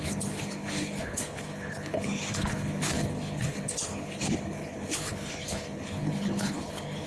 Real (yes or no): no